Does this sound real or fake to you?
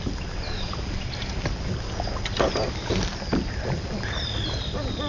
real